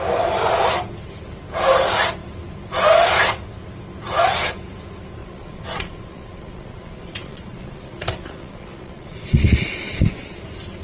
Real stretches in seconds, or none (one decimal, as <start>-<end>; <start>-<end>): 0.0-5.2; 10.4-10.8